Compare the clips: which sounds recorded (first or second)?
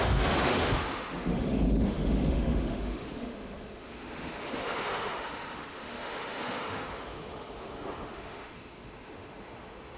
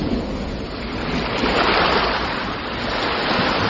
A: second